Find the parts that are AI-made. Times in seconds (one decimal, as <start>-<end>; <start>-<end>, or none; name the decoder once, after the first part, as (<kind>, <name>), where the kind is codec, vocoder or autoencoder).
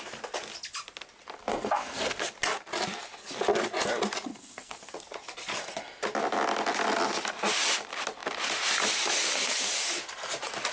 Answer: 1.4-2.3 (codec, SNAC); 4.3-4.8